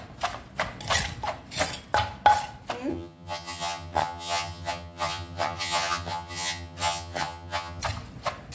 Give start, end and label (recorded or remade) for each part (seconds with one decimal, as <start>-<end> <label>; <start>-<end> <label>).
0.0-2.9 recorded; 2.9-7.8 remade; 7.8-8.5 recorded